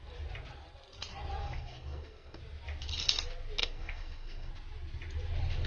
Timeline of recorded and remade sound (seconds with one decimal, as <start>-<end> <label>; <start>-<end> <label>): 0.0-1.4 recorded; 1.4-2.4 remade; 2.4-3.6 recorded; 3.6-4.5 remade; 4.5-5.7 recorded